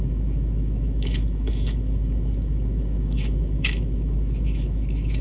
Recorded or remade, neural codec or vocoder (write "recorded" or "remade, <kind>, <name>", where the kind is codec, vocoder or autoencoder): remade, autoencoder, DAC-VAE